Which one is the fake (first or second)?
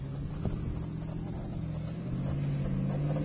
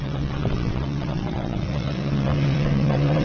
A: second